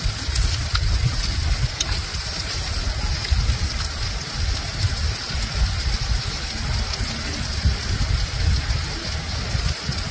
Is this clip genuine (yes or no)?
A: yes